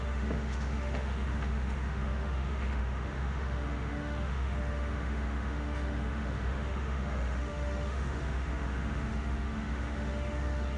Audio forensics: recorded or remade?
remade